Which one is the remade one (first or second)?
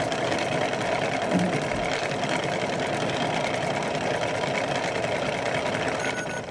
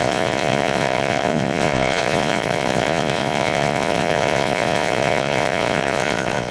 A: second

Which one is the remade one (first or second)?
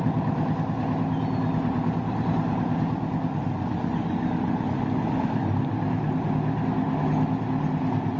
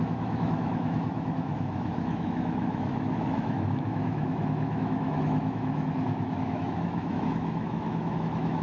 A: second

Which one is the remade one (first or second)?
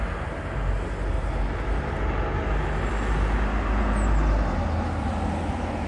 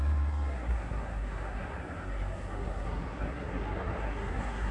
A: second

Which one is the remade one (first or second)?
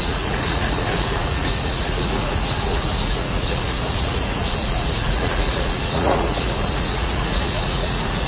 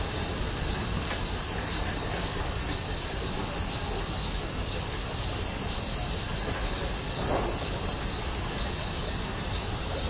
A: first